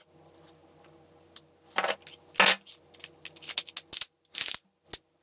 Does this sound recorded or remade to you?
recorded